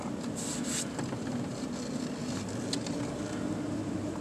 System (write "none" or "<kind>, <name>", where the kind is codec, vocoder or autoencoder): none